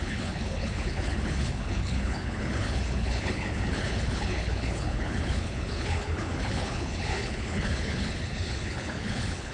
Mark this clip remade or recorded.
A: remade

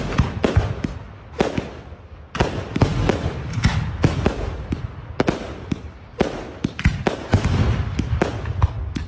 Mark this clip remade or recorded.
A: recorded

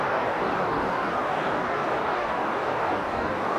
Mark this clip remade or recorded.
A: remade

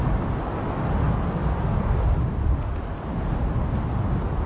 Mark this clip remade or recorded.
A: recorded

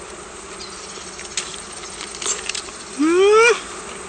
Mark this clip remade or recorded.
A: recorded